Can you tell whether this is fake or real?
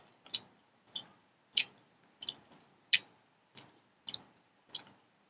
real